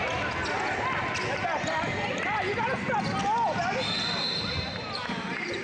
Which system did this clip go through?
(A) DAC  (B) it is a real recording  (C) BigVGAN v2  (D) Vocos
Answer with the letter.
B